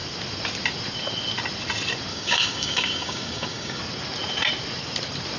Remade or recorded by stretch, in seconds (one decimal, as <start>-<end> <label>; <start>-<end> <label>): 0.0-2.1 recorded; 2.1-3.8 remade; 3.8-5.4 recorded